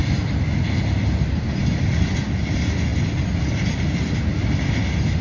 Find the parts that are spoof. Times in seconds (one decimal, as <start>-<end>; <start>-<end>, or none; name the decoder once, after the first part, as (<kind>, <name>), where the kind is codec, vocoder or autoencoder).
none